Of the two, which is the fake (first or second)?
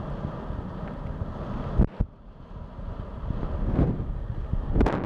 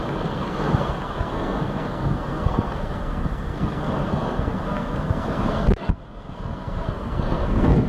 second